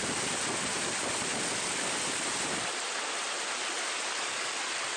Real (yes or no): yes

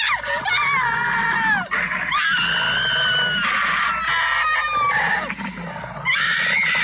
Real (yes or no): yes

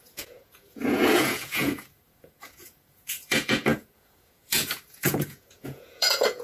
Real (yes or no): no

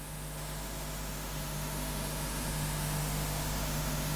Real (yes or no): no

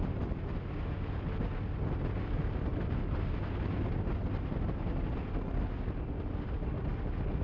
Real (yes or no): yes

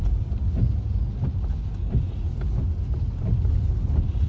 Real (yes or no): yes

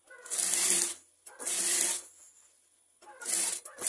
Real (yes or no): yes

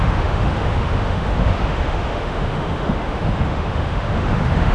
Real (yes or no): no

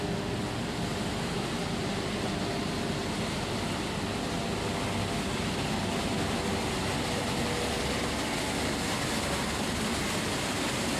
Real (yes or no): yes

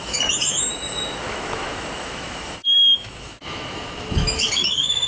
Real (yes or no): no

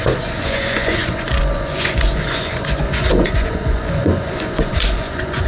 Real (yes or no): no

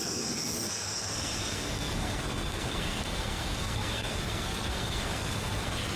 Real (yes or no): no